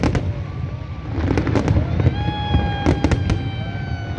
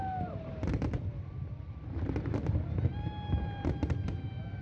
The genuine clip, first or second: first